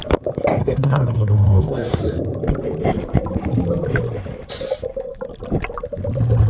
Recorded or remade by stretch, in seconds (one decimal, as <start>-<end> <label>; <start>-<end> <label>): 0.0-0.6 recorded; 0.6-2.0 remade; 2.0-6.5 recorded